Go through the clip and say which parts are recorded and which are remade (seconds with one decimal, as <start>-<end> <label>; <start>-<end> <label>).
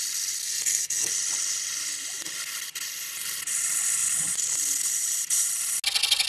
0.0-0.4 recorded; 0.4-1.1 remade; 1.1-6.3 recorded